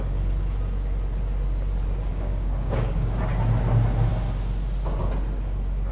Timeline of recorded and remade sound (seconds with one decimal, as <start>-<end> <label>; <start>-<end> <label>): 0.0-2.1 recorded; 2.1-3.2 remade; 3.2-5.9 recorded